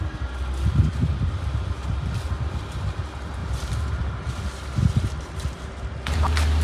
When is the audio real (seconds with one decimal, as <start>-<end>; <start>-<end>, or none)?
0.0-6.6